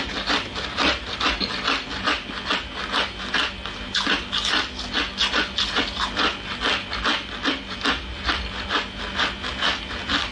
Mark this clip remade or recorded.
recorded